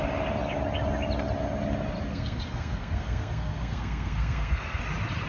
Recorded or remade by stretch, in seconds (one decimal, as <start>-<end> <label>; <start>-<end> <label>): 0.0-2.1 recorded; 2.1-4.8 remade; 4.8-5.3 recorded